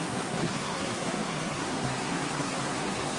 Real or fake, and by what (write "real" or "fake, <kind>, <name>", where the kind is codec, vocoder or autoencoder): fake, codec, SNAC